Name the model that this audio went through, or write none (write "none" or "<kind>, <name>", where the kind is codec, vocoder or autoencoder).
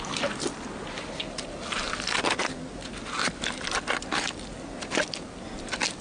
none